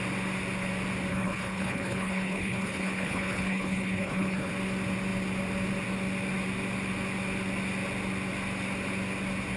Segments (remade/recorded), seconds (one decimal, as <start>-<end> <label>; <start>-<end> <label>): 0.0-1.1 recorded; 1.1-4.5 remade; 4.5-9.6 recorded